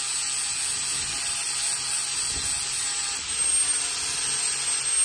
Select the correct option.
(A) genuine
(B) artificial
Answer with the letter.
A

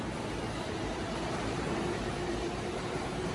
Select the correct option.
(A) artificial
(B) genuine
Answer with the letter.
A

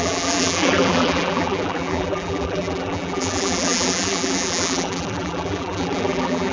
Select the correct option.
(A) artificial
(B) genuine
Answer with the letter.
A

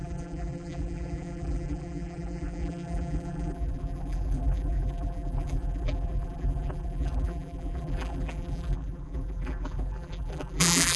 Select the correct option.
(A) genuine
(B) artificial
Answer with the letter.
B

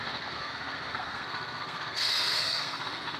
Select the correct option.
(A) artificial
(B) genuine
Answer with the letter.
A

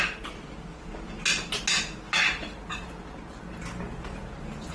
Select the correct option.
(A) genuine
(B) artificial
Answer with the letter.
A